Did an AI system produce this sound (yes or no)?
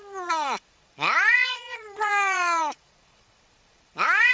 yes